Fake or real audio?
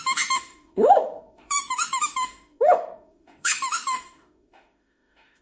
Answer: fake